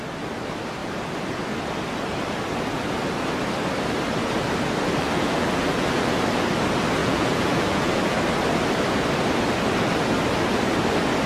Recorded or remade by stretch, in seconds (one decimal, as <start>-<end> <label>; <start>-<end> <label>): 0.0-5.0 recorded; 5.0-6.1 remade; 6.1-7.0 recorded; 7.0-8.2 remade; 8.2-11.3 recorded